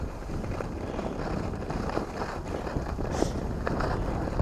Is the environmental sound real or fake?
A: fake